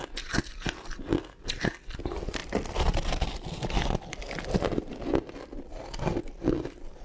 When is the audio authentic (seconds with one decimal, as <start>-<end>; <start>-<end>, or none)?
0.0-7.0